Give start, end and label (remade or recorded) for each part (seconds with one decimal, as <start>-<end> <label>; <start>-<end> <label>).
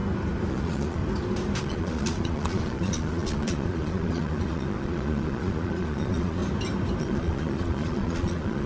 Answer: 0.0-0.5 recorded; 0.5-1.0 remade; 1.0-1.6 recorded; 1.6-6.4 remade; 6.4-7.0 recorded; 7.0-8.7 remade